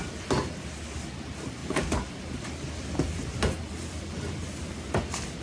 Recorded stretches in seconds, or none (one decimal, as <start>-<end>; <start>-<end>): 0.0-5.4